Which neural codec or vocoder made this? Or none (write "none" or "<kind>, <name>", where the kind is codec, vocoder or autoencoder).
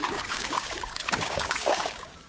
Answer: codec, DAC